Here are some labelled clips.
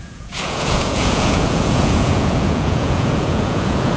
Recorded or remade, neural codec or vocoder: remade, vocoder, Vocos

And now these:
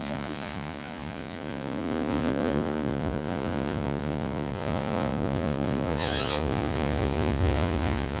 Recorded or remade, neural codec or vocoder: remade, vocoder, Vocos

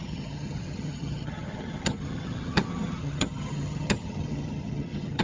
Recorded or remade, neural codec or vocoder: remade, vocoder, HiFi-GAN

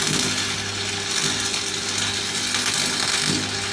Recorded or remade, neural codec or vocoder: recorded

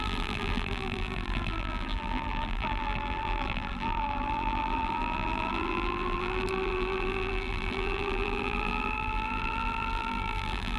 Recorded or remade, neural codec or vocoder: remade, vocoder, BigVGAN v2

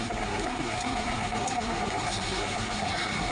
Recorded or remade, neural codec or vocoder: remade, codec, SNAC